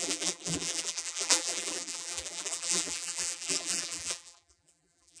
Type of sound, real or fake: fake